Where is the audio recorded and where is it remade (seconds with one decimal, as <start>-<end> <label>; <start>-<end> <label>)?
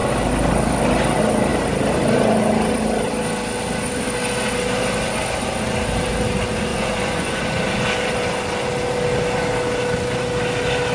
0.0-6.7 recorded; 6.7-7.6 remade; 7.6-10.9 recorded